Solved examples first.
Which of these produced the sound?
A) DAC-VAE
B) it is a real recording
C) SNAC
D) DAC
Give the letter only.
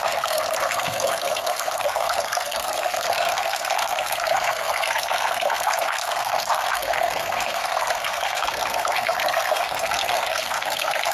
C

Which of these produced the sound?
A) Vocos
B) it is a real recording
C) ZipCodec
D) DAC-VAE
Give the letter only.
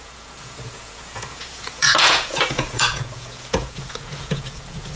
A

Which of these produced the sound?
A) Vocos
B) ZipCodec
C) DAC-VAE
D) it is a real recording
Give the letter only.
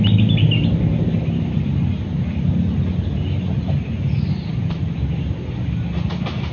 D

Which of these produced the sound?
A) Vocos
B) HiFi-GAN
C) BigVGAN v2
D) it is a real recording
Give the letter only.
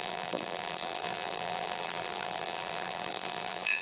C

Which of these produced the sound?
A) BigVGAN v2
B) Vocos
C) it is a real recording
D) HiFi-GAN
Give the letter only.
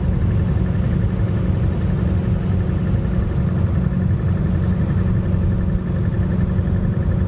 C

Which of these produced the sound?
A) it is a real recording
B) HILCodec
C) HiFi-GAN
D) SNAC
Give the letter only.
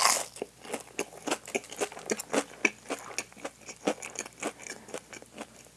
A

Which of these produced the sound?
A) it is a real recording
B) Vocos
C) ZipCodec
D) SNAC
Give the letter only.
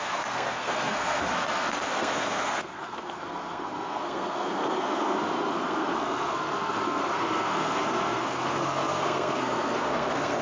D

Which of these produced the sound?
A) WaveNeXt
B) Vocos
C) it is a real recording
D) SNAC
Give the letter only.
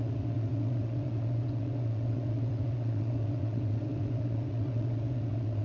A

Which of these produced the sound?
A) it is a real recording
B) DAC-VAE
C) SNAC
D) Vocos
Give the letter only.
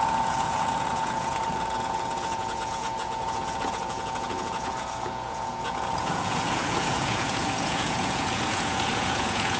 D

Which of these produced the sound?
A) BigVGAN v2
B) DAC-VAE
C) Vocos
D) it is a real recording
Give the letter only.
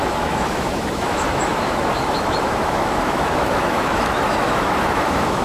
B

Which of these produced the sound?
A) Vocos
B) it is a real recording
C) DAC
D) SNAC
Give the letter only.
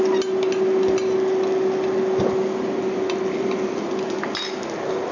B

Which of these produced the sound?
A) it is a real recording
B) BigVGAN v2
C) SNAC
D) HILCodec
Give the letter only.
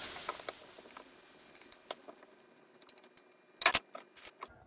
A